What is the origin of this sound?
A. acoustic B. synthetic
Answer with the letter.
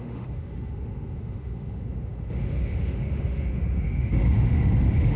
B